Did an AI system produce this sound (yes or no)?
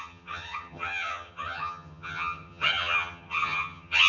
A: yes